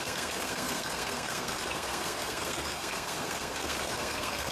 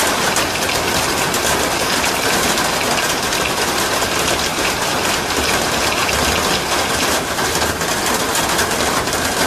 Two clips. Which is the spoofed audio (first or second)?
first